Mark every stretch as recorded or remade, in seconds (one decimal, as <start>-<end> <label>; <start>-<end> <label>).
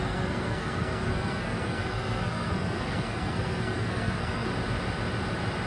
0.0-4.5 remade; 4.5-5.7 recorded